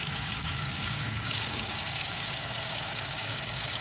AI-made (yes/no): yes